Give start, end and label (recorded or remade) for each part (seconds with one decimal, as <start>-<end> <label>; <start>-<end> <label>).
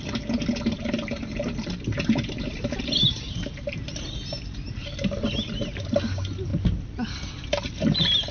0.0-6.5 remade; 6.5-7.6 recorded; 7.6-8.3 remade